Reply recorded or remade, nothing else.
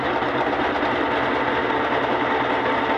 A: recorded